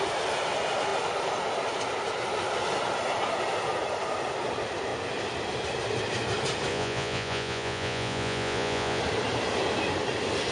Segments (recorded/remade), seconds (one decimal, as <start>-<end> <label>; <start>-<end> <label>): 0.0-6.7 recorded; 6.7-9.0 remade; 9.0-10.5 recorded